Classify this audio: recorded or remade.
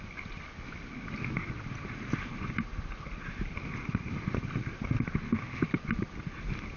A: recorded